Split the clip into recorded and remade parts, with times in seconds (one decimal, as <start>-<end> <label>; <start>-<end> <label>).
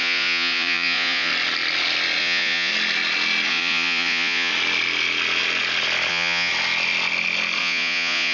0.0-1.3 remade; 1.3-2.2 recorded; 2.2-2.7 remade; 2.7-3.5 recorded; 3.5-4.5 remade; 4.5-6.1 recorded; 6.1-6.5 remade; 6.5-7.6 recorded; 7.6-8.3 remade